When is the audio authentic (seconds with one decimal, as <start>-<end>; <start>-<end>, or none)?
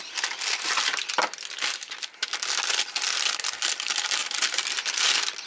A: 0.0-5.5